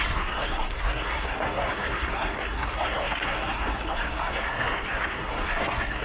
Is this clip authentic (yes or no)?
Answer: no